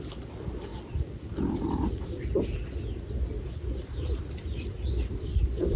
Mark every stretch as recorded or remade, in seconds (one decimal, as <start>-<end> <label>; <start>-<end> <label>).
0.0-5.8 recorded